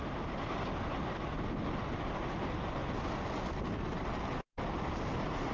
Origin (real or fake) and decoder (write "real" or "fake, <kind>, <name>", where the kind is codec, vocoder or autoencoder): real